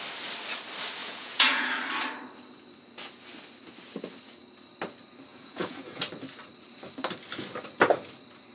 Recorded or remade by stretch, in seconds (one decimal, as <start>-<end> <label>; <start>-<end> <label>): 0.0-1.0 recorded; 1.0-1.7 remade; 1.7-5.3 recorded; 5.3-6.0 remade; 6.0-8.5 recorded